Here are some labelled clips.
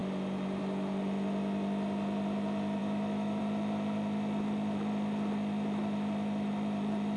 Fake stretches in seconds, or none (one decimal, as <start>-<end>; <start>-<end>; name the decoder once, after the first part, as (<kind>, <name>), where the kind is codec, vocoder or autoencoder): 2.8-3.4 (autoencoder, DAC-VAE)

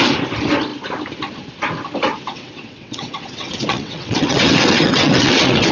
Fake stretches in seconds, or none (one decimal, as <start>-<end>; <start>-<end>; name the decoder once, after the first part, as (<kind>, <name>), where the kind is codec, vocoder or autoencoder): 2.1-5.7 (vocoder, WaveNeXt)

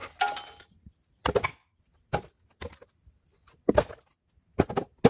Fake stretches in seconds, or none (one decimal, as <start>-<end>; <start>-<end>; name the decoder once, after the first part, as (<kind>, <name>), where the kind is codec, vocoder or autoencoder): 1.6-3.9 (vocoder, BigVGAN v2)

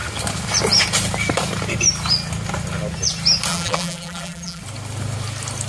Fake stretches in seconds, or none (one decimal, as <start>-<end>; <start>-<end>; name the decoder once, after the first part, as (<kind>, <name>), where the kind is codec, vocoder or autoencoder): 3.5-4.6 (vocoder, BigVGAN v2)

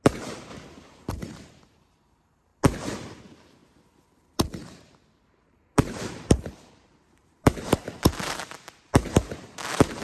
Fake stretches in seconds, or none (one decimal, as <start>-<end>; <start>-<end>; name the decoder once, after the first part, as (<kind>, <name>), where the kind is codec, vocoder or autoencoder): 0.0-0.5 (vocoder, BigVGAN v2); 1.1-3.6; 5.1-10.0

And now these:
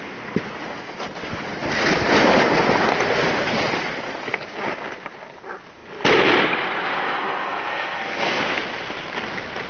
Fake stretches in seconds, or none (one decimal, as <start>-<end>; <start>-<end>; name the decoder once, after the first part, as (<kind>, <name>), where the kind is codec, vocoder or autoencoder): 7.0-8.4 (codec, SNAC)